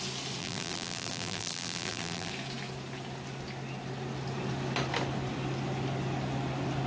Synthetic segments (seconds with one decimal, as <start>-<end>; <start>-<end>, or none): 0.4-2.3